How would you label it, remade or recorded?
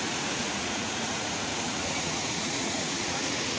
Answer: remade